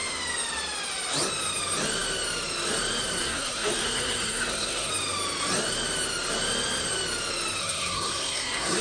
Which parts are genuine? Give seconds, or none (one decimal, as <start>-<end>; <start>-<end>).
0.0-3.2; 4.9-7.6